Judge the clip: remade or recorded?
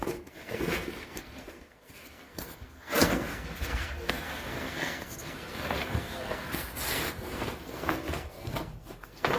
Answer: remade